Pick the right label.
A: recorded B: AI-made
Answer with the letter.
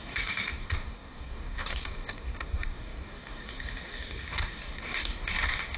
B